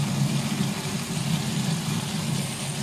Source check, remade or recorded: recorded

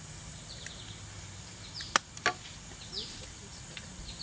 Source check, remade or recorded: recorded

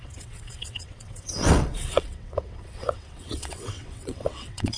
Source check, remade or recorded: remade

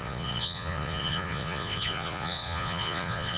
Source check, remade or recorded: remade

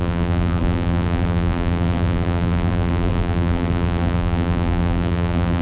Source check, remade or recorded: remade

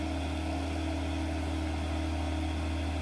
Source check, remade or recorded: recorded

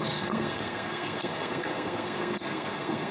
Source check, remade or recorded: remade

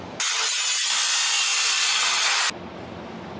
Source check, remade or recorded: recorded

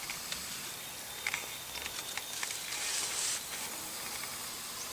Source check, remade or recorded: recorded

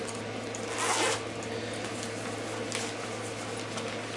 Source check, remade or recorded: recorded